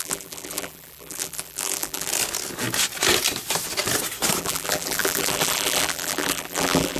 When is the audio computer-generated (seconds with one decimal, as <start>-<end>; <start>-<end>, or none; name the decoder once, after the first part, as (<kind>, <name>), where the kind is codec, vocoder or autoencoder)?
0.0-2.1 (vocoder, BigVGAN v2); 4.4-7.0